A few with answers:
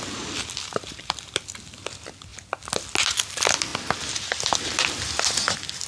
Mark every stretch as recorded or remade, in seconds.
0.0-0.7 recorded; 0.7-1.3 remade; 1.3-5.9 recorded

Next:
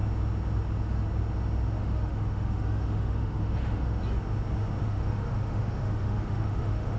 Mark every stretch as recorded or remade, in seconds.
0.0-1.8 recorded; 1.8-4.0 remade; 4.0-4.8 recorded; 4.8-7.0 remade

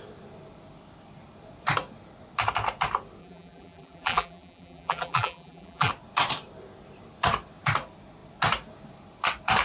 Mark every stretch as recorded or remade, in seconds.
0.0-3.2 recorded; 3.2-5.9 remade; 5.9-9.6 recorded

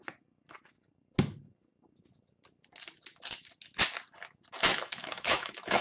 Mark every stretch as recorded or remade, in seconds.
0.0-4.7 recorded; 4.7-5.8 remade